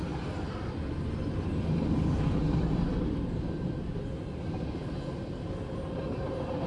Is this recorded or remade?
recorded